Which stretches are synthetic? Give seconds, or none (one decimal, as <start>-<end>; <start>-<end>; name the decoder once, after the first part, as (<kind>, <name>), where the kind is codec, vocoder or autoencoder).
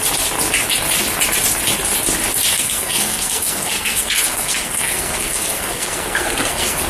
2.5-6.9 (codec, SNAC)